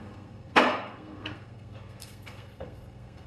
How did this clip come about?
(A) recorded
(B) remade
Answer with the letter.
B